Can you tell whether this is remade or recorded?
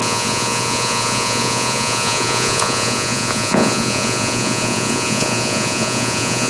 remade